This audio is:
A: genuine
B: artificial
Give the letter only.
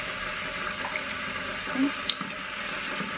B